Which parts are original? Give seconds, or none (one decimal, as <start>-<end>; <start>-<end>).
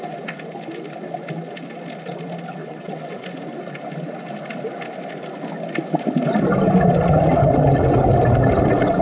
0.0-2.6; 3.2-9.0